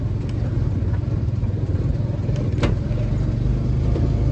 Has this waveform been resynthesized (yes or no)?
no